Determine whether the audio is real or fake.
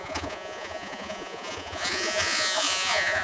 fake